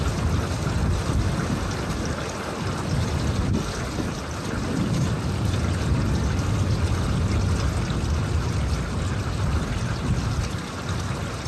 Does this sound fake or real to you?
real